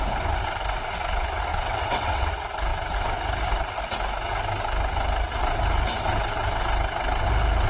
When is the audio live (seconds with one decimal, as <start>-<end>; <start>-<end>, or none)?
0.0-1.5; 2.3-7.7